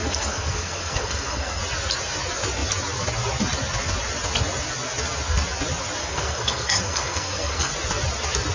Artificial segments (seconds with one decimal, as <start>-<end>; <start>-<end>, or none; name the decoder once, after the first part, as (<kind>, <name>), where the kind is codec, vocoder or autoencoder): 0.0-1.6 (codec, SNAC); 6.0-7.7